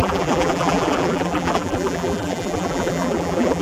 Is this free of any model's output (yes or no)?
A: no